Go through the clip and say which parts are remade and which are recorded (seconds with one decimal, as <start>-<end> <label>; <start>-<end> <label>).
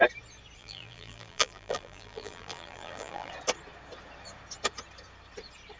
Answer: 0.0-0.6 recorded; 0.6-3.3 remade; 3.3-5.8 recorded